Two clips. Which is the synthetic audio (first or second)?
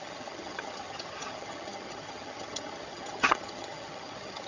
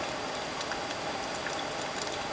first